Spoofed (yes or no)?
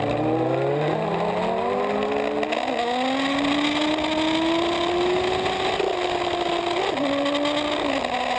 no